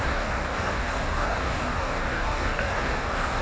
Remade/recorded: remade